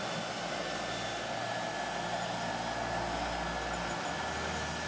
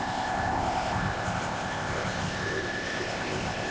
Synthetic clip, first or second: second